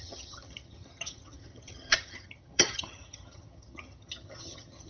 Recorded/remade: remade